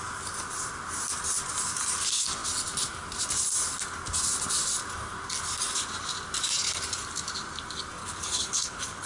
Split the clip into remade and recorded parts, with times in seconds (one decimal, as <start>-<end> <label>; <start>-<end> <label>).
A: 0.0-8.0 recorded; 8.0-9.1 remade